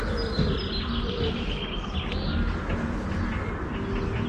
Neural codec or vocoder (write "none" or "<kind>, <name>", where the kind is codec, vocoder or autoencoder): none